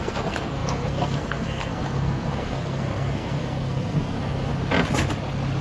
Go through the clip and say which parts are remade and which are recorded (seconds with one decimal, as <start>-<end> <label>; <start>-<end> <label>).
0.0-4.5 remade; 4.5-5.6 recorded